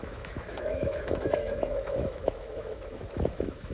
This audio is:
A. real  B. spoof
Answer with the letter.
B